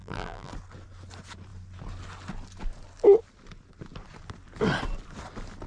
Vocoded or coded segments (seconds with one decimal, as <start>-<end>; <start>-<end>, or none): 0.0-0.5